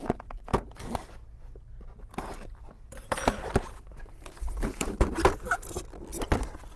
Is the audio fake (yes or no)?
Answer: no